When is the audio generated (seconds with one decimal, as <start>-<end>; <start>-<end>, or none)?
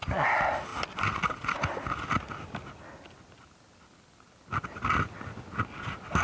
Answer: none